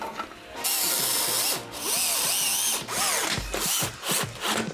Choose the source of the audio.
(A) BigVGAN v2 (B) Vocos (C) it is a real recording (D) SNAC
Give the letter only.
C